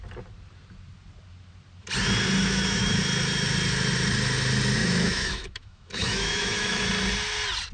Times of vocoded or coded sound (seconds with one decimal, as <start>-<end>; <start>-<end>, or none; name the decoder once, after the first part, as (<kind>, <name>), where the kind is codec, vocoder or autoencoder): 2.4-3.0 (autoencoder, DAC-VAE); 4.8-6.9